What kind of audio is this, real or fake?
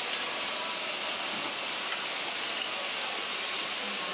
real